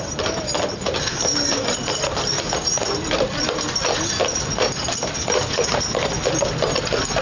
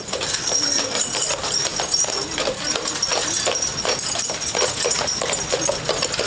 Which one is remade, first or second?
second